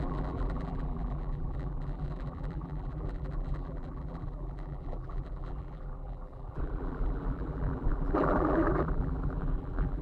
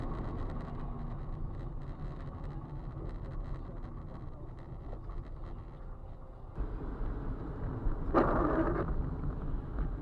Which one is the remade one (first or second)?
first